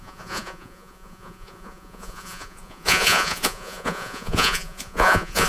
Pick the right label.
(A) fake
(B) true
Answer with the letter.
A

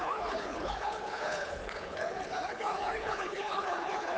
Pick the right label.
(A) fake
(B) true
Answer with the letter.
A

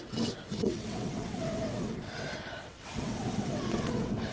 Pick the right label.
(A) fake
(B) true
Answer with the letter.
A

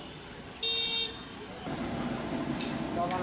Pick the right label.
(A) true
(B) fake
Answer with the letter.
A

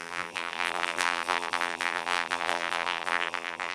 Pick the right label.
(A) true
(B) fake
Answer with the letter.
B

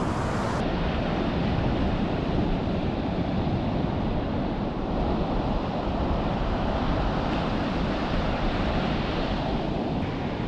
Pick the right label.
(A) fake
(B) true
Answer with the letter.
A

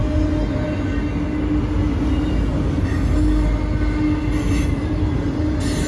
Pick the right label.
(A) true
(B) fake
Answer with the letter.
A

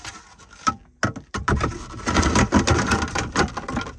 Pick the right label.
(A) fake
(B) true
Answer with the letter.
B